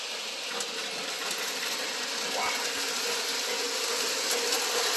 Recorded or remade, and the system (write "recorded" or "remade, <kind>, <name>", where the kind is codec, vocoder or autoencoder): recorded